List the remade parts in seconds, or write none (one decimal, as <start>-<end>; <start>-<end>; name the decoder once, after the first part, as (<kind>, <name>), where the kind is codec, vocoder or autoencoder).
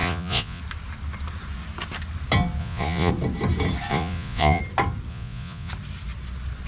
0.0-0.6 (vocoder, Vocos); 2.6-3.1; 3.9-4.6; 5.1-5.7